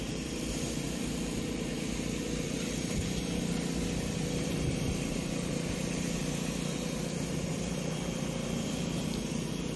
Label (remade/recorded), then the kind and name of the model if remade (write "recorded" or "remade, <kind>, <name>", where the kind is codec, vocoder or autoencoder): remade, vocoder, BigVGAN v2